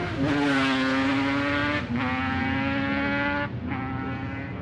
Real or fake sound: real